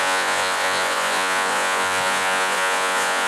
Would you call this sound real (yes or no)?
no